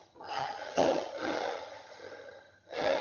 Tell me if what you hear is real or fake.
fake